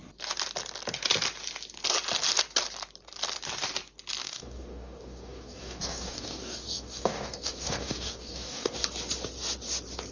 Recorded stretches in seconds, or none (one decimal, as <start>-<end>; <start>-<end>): 0.0-4.2; 8.8-10.1